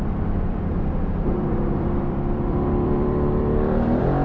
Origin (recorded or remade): remade